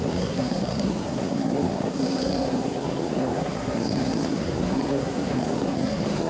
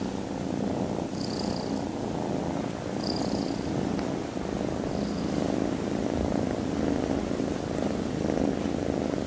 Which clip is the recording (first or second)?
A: second